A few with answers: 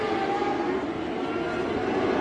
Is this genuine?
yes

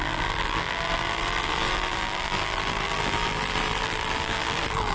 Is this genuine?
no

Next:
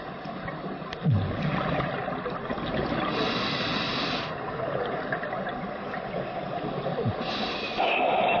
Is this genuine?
yes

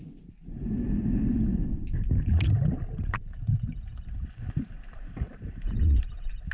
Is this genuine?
yes